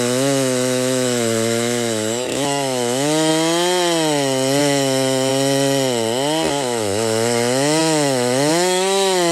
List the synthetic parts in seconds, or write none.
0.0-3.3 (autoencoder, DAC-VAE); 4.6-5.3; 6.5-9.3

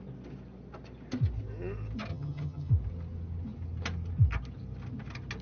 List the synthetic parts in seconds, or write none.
2.1-2.7 (vocoder, HiFi-GAN)

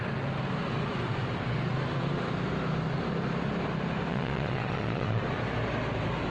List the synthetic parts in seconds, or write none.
4.1-5.2 (vocoder, Vocos)

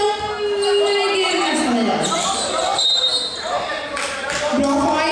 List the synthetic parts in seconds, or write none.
none